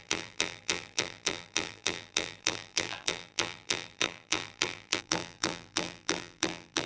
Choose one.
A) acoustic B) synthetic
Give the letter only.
B